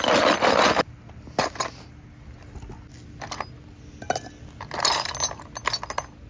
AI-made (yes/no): no